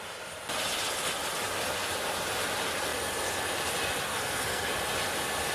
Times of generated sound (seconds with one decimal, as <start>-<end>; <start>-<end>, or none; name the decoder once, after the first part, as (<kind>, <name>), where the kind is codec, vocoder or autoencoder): 4.1-4.7 (codec, SNAC)